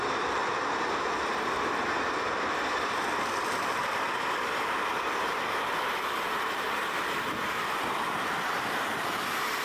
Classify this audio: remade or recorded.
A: remade